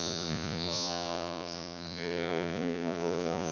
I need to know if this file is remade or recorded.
remade